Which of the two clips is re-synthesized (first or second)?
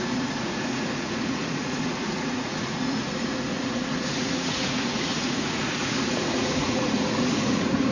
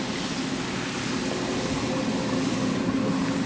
first